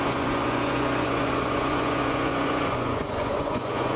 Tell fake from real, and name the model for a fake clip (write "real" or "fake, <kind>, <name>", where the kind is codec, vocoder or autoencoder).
fake, vocoder, Vocos